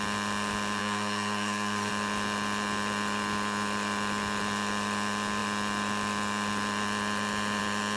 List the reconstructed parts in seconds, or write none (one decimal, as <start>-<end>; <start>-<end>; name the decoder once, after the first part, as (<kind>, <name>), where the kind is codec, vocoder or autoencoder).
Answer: 0.8-1.9 (codec, SNAC)